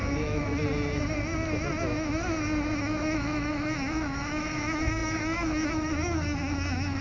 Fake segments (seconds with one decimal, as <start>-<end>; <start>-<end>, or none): 0.0-0.5; 2.8-7.0